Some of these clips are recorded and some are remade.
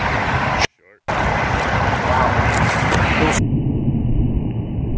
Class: recorded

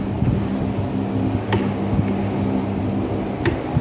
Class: recorded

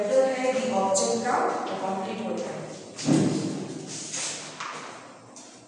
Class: recorded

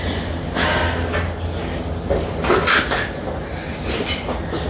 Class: recorded